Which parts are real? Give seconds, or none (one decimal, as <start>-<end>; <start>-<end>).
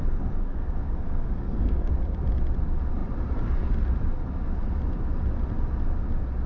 0.0-0.4; 1.9-6.5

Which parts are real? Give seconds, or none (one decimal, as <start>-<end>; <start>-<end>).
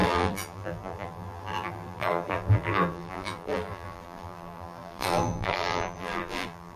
none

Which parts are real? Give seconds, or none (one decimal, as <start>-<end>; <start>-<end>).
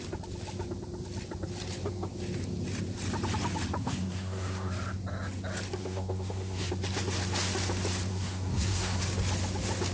0.0-3.8; 4.7-5.8; 6.7-8.1; 9.0-9.9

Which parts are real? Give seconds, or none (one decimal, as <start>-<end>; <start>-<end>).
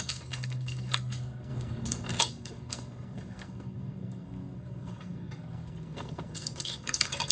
none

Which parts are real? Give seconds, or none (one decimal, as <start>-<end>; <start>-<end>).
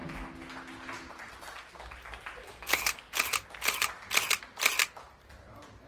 0.0-2.4; 3.0-5.9